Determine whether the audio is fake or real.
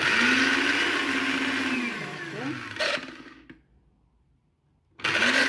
real